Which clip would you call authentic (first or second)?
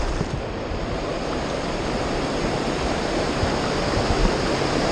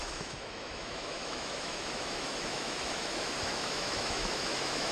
first